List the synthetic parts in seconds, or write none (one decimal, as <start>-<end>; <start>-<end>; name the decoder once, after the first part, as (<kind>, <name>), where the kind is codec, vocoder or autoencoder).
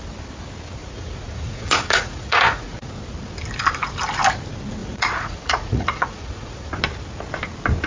0.8-2.9 (vocoder, Vocos); 4.8-6.7